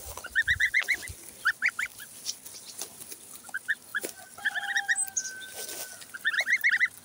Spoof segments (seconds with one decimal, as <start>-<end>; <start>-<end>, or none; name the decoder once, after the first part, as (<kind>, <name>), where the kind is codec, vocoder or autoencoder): none